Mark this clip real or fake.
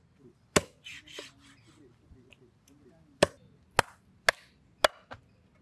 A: real